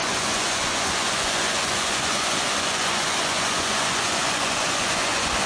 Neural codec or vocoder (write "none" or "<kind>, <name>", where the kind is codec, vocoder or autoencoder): vocoder, Vocos